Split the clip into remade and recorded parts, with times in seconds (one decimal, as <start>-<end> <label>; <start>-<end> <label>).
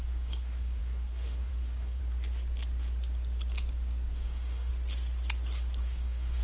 0.0-2.0 remade; 2.0-4.1 recorded; 4.1-4.7 remade; 4.7-5.8 recorded; 5.8-6.4 remade